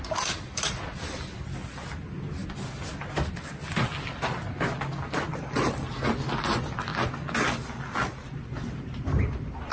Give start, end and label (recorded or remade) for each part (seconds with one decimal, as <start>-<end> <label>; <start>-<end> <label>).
0.0-6.9 recorded; 6.9-9.7 remade